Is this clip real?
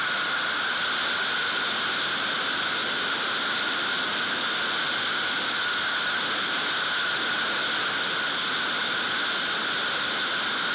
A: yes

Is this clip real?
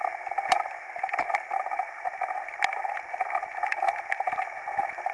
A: yes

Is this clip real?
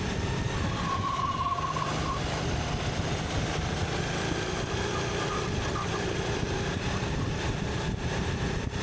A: no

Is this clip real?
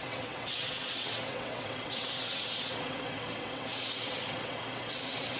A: no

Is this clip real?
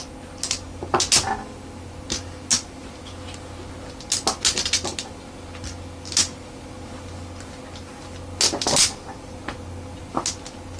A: yes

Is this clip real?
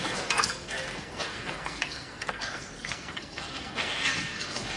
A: no